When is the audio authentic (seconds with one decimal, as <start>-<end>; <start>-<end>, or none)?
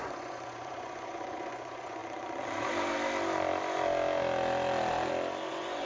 2.0-5.5